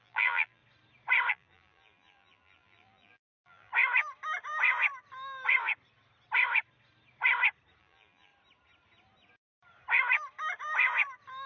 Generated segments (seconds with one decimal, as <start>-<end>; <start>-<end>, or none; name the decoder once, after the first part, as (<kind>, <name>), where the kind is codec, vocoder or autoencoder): 0.0-0.6 (vocoder, BigVGAN v2); 1.3-3.7; 7.8-8.3